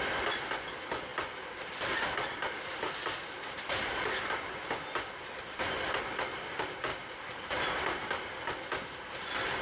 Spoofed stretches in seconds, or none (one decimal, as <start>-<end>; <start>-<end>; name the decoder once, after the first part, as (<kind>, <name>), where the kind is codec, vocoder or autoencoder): 1.1-2.9 (vocoder, BigVGAN v2); 6.9-8.3